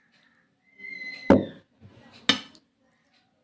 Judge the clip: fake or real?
real